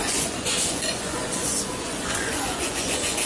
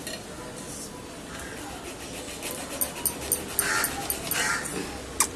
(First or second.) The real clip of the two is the second